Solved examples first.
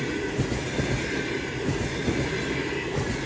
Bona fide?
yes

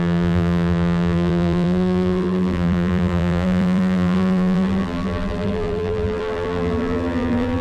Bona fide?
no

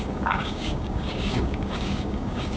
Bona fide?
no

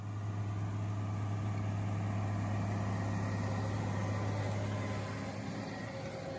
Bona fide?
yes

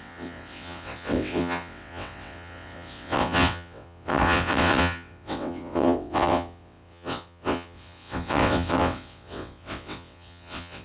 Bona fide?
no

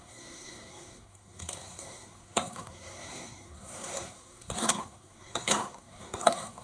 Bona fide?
no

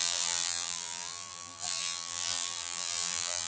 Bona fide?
no